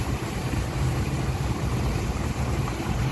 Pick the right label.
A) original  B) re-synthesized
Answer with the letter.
B